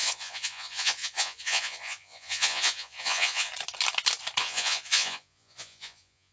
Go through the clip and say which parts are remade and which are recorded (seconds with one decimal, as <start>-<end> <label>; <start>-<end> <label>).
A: 0.0-3.5 remade; 3.5-4.4 recorded; 4.4-6.3 remade